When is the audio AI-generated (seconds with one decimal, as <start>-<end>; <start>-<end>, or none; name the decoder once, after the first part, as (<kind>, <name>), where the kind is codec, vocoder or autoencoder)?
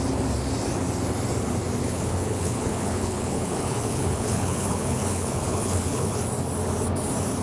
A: 1.8-6.2 (codec, HILCodec)